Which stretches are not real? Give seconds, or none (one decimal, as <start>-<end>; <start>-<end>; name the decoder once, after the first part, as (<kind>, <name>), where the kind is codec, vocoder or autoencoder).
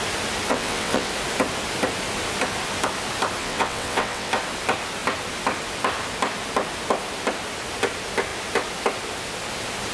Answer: 0.5-1.1 (vocoder, WaveNeXt); 3.4-4.3